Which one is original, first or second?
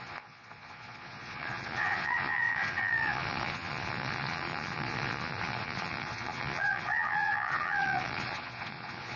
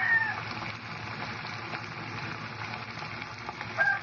second